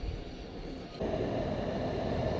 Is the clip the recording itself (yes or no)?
yes